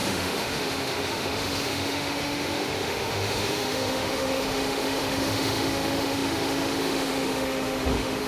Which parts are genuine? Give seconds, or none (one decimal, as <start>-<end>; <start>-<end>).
none